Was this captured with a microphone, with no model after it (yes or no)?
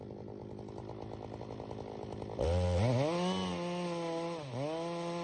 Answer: yes